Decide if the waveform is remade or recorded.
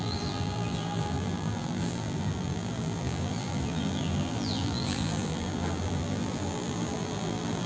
remade